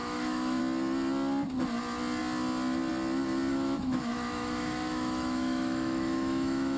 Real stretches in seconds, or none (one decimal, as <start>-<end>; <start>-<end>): 0.6-3.5